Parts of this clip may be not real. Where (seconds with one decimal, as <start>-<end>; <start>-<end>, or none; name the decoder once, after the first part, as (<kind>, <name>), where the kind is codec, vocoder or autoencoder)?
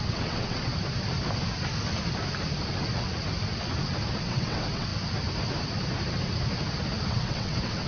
0.0-0.7 (vocoder, WaveNeXt); 4.2-4.9; 7.1-7.9